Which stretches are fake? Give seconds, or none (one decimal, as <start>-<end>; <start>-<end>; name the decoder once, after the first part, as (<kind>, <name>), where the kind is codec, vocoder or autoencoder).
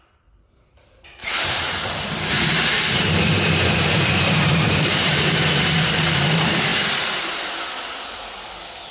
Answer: 1.2-5.2 (vocoder, BigVGAN v2); 6.7-7.3